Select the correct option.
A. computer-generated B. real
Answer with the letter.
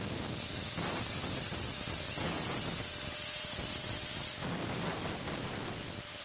B